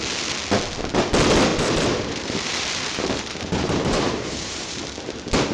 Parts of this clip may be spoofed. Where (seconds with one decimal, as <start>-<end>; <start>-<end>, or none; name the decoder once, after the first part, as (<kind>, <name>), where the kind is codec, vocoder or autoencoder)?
1.5-4.8 (vocoder, BigVGAN v2)